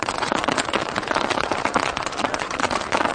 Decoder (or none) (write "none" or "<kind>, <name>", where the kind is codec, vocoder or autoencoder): vocoder, Vocos